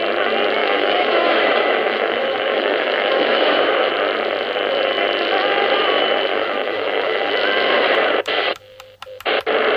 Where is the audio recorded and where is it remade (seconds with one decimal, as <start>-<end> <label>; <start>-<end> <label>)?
0.0-0.6 recorded; 0.6-3.9 remade; 3.9-6.3 recorded; 6.3-7.3 remade; 7.3-9.8 recorded